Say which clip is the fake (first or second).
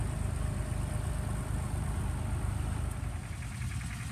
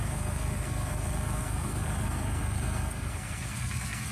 second